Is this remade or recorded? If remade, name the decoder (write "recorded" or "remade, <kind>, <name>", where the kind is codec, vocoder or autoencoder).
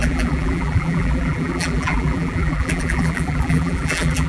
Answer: remade, vocoder, BigVGAN v2